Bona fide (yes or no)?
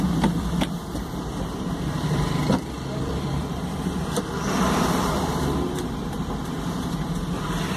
no